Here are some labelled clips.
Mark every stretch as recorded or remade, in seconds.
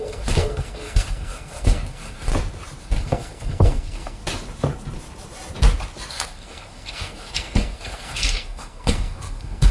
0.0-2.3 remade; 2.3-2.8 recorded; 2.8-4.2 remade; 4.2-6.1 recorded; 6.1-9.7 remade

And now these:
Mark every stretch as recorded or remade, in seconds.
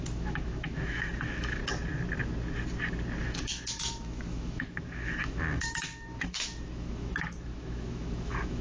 0.0-1.6 remade; 1.6-3.2 recorded; 3.2-8.6 remade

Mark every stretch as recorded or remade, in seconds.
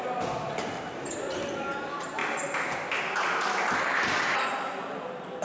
0.0-5.4 recorded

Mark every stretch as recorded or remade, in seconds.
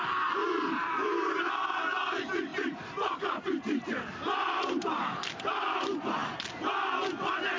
0.0-0.4 recorded; 0.4-1.5 remade; 1.5-7.6 recorded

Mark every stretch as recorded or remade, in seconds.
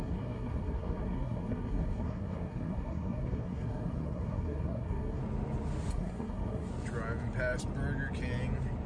0.0-5.2 remade; 5.2-5.9 recorded; 5.9-6.7 remade; 6.7-8.9 recorded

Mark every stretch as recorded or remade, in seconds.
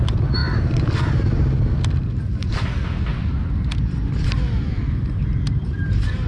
0.0-6.3 recorded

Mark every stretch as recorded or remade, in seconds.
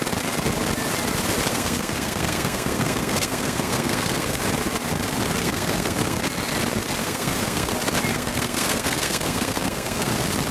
0.0-1.5 recorded; 1.5-4.4 remade; 4.4-5.4 recorded; 5.4-6.2 remade; 6.2-7.0 recorded; 7.0-7.7 remade; 7.7-8.1 recorded; 8.1-10.1 remade; 10.1-10.5 recorded